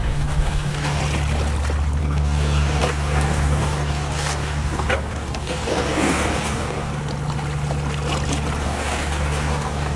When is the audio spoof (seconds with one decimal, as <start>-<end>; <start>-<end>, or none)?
0.0-1.0; 2.0-6.9; 8.6-10.0